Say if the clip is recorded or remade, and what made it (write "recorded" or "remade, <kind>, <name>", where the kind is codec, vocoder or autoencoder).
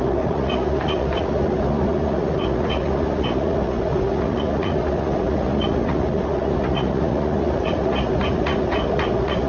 remade, vocoder, Vocos